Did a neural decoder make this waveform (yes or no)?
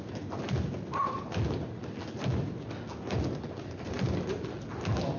no